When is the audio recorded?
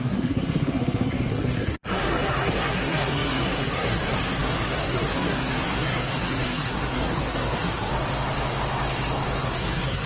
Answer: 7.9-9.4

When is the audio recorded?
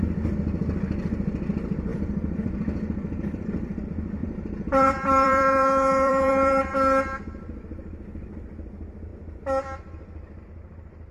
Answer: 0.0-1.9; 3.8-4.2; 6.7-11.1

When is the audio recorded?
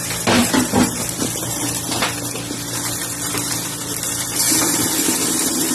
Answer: 0.0-5.7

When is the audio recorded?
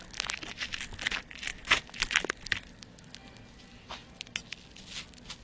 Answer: 0.0-5.4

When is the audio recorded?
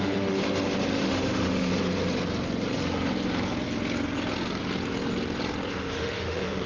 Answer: 0.4-1.0; 1.7-5.7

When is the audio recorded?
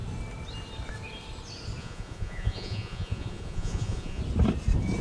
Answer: 0.0-1.8; 4.2-5.0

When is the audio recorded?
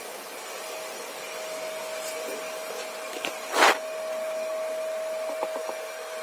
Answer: 0.0-6.2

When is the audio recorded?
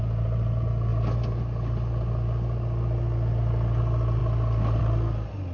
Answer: 0.0-5.5